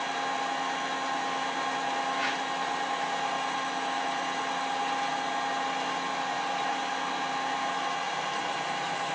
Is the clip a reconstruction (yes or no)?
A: no